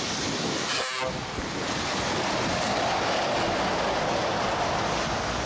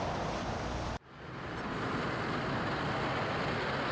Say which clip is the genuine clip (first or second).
first